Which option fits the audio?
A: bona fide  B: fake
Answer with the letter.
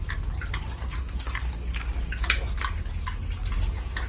A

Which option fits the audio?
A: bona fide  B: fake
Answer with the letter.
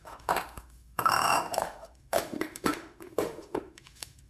B